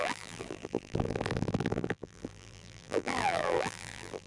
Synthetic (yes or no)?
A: yes